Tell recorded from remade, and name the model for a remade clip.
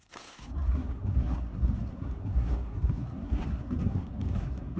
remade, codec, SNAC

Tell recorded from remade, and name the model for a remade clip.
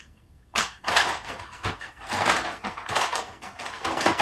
remade, codec, SNAC